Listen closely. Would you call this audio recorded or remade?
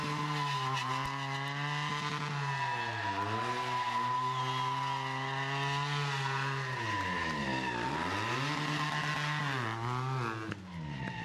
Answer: recorded